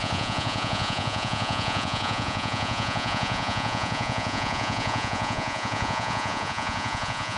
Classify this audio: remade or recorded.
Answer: remade